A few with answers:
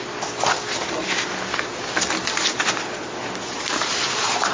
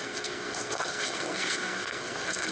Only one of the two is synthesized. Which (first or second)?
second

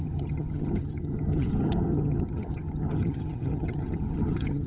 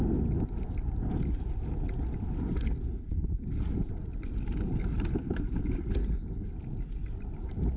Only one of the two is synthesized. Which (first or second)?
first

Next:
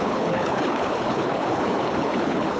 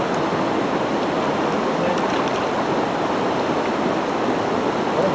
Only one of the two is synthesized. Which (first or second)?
first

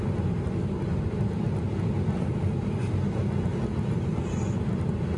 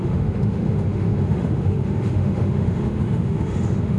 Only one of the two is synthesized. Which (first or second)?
second